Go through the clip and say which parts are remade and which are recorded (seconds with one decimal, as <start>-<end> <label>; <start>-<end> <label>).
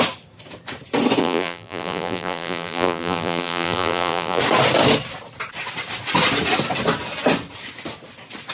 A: 0.0-1.2 recorded; 1.2-4.4 remade; 4.4-8.5 recorded